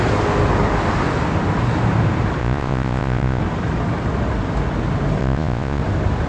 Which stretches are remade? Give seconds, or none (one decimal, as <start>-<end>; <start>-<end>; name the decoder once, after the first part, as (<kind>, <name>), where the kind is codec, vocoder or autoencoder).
2.4-3.4 (vocoder, Vocos); 5.2-5.8